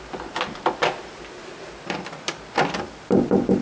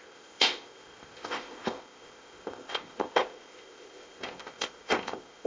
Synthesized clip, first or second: second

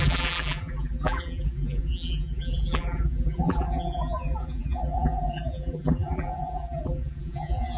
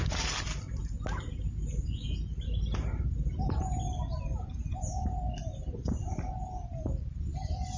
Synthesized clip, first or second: first